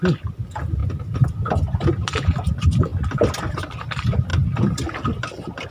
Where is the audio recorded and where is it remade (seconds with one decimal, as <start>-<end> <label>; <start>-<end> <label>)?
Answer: 0.0-2.9 remade; 2.9-3.6 recorded; 3.6-4.3 remade; 4.3-5.7 recorded